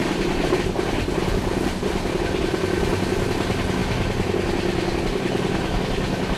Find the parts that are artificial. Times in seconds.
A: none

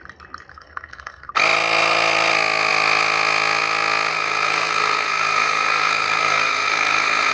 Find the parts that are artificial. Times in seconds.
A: 0.5-1.3 (codec, SNAC); 4.1-7.3

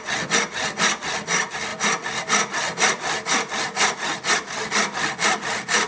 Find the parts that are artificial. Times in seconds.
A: none